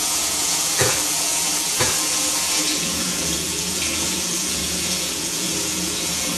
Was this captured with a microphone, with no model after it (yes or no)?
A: no